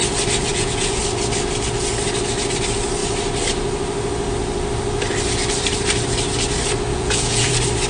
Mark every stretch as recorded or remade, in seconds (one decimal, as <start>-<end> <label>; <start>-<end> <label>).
0.0-0.5 recorded; 0.5-1.0 remade; 1.0-6.9 recorded; 6.9-7.5 remade; 7.5-7.9 recorded